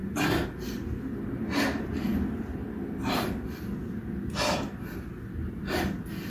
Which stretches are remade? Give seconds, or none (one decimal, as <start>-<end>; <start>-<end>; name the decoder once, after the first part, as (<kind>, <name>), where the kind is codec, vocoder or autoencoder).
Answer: none